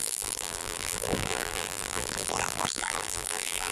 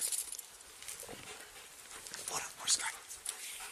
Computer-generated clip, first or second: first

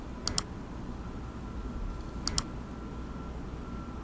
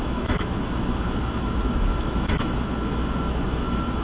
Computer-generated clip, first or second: second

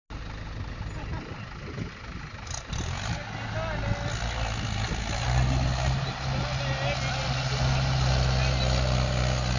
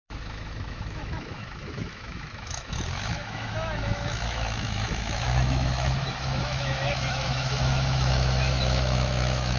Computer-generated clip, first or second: second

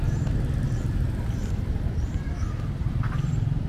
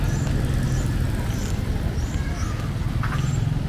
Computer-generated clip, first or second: first